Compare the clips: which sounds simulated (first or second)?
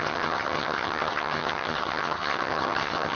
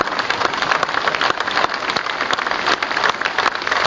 first